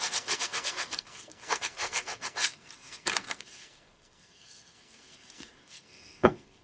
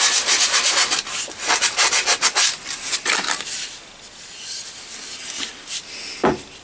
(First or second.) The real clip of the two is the second